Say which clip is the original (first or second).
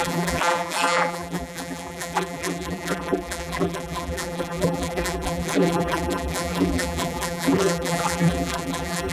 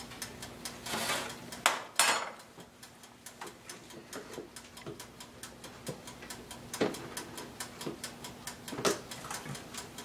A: second